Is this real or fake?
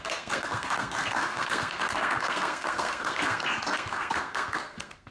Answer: fake